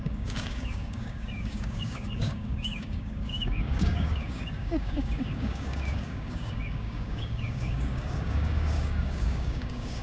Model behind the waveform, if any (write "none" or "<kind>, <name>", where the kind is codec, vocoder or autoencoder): codec, DAC